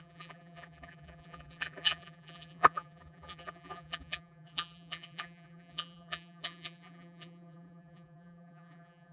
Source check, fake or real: fake